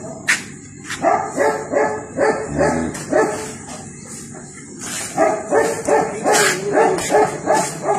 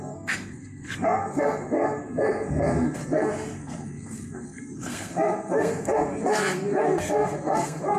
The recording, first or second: first